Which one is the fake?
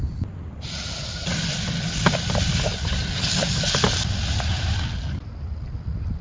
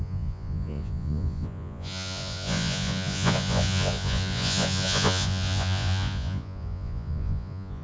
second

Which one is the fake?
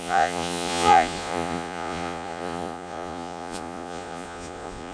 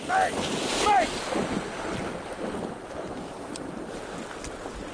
first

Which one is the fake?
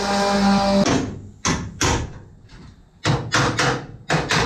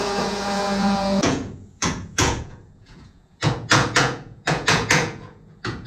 second